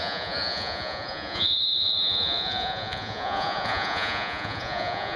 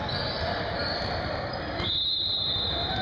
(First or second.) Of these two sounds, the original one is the second